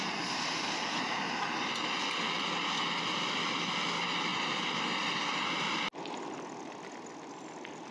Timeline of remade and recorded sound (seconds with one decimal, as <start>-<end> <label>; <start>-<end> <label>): 0.0-7.9 recorded

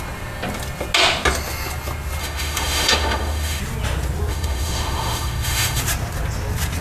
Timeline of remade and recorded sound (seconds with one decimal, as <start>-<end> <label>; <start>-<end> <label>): 0.0-2.2 recorded; 2.2-3.6 remade; 3.6-4.3 recorded; 4.3-5.8 remade; 5.8-6.8 recorded